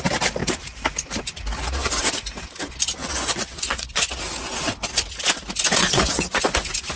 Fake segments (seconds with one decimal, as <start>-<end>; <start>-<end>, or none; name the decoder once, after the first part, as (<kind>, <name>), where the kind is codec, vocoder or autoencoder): 3.0-4.1 (vocoder, Vocos); 5.8-6.4